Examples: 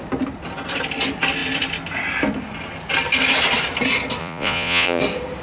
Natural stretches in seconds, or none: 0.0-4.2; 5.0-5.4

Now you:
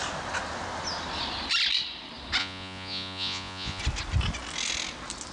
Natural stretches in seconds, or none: 0.0-2.4; 3.8-5.3

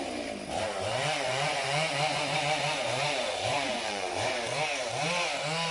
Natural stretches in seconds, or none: 0.0-0.9; 4.3-5.7

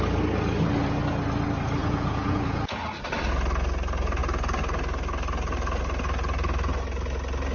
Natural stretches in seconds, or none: 0.0-1.8; 2.8-7.5

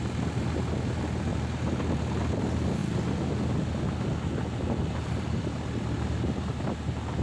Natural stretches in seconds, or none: 0.0-7.2